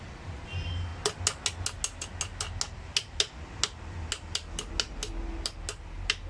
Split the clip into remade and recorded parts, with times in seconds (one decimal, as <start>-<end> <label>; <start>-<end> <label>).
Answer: 0.0-6.3 recorded

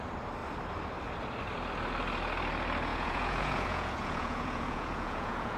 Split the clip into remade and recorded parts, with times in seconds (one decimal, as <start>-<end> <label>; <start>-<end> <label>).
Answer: 0.0-2.9 recorded; 2.9-5.6 remade